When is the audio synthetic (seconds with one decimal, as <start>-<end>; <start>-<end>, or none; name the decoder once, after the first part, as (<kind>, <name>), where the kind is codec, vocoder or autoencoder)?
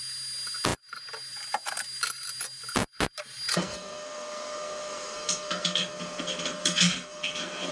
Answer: 3.5-7.7 (codec, SNAC)